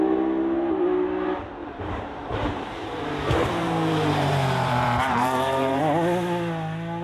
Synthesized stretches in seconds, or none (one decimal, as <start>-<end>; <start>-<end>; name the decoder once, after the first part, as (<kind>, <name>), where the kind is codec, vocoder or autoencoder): 1.6-5.8 (vocoder, BigVGAN v2)